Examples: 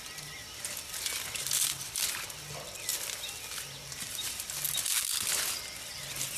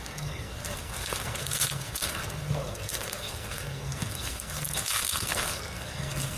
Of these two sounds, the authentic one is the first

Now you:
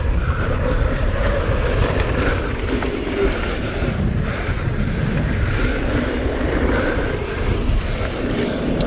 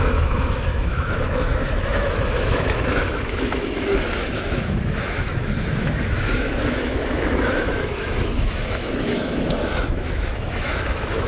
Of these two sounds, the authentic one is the first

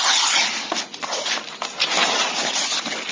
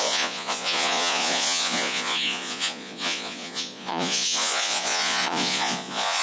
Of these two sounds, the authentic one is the first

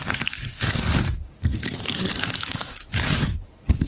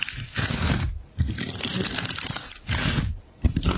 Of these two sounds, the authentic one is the second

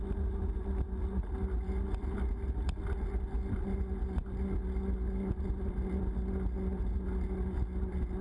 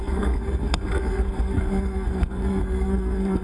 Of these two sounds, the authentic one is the first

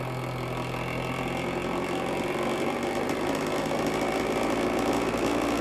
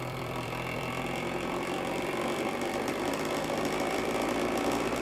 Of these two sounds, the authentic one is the first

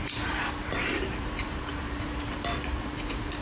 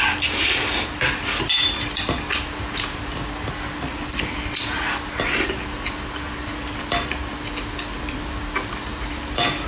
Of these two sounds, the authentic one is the second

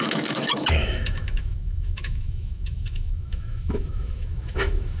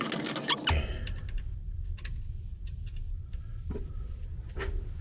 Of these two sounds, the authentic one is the second